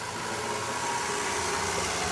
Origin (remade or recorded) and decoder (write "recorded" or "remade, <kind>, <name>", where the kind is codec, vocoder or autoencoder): recorded